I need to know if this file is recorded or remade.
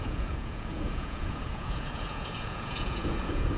remade